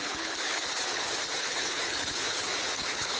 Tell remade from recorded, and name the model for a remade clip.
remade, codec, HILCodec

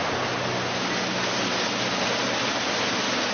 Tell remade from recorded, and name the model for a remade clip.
recorded